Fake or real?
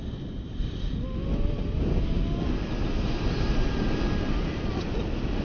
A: real